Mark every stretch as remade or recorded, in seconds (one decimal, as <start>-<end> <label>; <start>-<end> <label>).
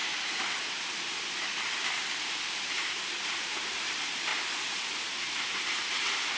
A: 0.0-4.3 remade; 4.3-4.9 recorded; 4.9-6.4 remade